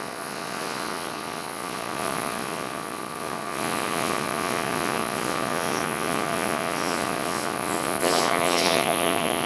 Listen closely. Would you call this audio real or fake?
fake